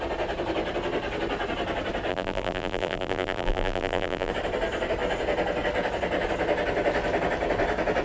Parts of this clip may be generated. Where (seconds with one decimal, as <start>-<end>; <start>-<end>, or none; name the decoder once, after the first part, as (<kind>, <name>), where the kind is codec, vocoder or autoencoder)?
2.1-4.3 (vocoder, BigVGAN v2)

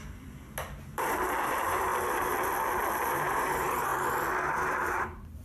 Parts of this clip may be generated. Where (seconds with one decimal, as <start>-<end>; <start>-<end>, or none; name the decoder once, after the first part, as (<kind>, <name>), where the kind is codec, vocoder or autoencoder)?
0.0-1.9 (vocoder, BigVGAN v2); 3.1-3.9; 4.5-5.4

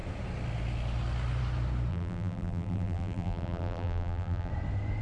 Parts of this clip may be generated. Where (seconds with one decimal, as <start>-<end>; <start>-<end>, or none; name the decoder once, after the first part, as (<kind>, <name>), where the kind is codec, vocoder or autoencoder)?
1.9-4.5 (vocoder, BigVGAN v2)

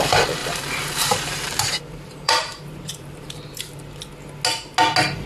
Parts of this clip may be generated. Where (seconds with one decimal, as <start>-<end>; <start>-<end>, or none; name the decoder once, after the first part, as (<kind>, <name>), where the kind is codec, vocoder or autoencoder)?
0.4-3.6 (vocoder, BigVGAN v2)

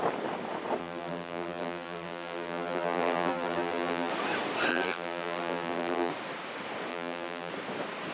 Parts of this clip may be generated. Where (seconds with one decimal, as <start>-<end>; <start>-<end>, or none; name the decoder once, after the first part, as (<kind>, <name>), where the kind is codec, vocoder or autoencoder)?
0.8-4.1 (vocoder, BigVGAN v2); 4.7-6.1; 6.9-7.5

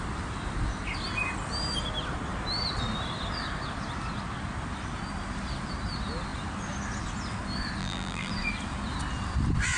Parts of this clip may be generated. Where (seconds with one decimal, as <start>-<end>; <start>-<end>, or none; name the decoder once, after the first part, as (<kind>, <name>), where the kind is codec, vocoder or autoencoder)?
7.8-8.3 (vocoder, BigVGAN v2)

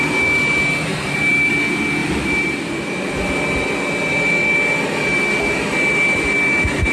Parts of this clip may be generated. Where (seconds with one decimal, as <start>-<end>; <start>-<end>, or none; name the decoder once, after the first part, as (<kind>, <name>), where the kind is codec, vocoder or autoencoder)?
0.9-1.5 (vocoder, BigVGAN v2); 2.0-3.2